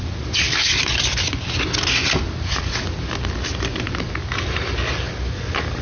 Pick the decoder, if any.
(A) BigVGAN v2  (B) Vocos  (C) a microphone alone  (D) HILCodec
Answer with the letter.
C